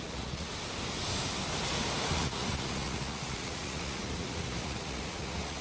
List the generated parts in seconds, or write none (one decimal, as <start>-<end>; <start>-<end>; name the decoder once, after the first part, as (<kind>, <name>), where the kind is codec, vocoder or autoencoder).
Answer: 0.0-0.5 (vocoder, Vocos); 2.1-5.6

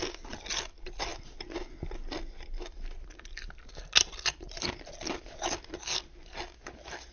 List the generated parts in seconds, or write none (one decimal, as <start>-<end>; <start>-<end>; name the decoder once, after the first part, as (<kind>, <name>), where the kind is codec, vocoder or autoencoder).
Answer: none

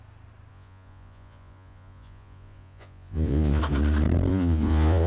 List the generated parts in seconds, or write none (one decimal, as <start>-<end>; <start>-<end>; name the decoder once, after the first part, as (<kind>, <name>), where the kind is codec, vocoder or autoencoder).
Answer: 0.5-3.6 (vocoder, Vocos); 4.3-5.1

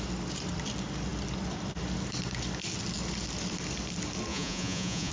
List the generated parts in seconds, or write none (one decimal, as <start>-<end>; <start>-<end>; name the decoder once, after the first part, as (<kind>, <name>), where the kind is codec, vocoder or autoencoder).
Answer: 4.3-5.1 (vocoder, Vocos)

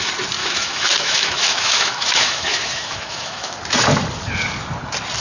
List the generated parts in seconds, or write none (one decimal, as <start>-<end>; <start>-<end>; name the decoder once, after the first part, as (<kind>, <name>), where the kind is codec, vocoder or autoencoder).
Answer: 0.4-3.5 (autoencoder, DAC-VAE)

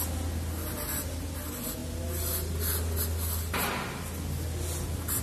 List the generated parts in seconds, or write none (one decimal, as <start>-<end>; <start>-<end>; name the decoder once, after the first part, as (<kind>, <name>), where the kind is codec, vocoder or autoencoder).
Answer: none